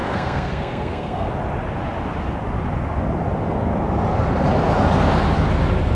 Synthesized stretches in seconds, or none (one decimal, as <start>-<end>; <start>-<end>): 0.0-1.3